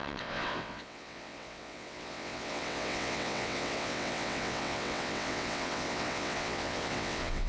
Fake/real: fake